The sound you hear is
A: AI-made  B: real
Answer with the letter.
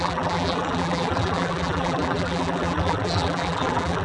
A